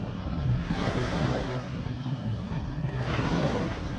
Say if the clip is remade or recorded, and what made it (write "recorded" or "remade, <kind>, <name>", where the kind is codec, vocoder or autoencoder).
remade, codec, SNAC